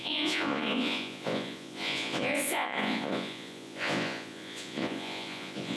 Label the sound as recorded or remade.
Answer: remade